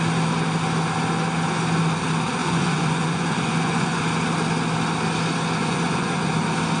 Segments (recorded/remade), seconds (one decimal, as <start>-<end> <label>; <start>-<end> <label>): 0.0-2.4 recorded; 2.4-4.0 remade; 4.0-5.6 recorded; 5.6-6.3 remade; 6.3-6.8 recorded